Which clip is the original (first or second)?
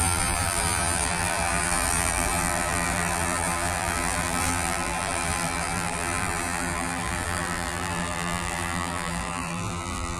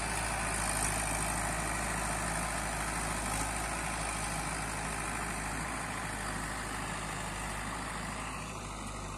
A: second